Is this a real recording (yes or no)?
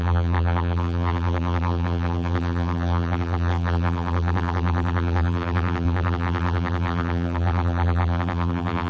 no